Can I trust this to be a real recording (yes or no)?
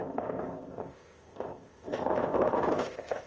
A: no